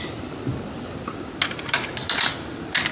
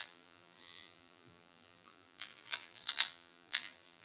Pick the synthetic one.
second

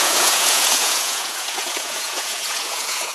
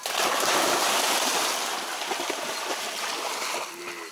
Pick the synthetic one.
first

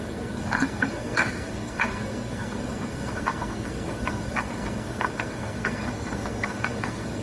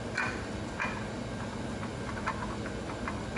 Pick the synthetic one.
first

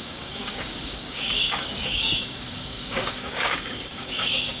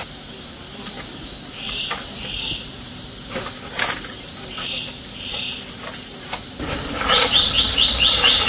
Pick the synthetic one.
first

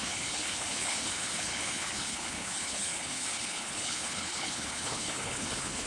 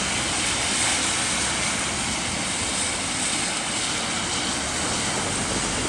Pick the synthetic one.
first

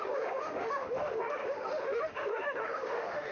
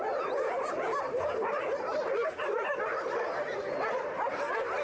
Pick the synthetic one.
first